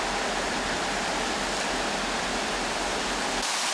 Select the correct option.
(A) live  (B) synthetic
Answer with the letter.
A